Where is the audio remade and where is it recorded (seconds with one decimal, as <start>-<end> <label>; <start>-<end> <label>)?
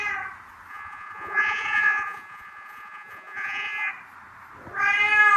0.0-0.7 recorded; 0.7-3.9 remade; 3.9-5.4 recorded